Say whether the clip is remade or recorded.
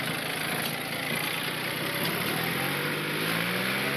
recorded